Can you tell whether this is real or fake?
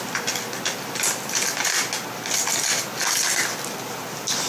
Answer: real